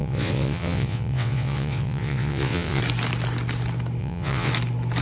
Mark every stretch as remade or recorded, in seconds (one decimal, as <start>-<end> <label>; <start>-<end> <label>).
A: 0.0-2.8 remade; 2.8-4.0 recorded; 4.0-4.5 remade; 4.5-5.0 recorded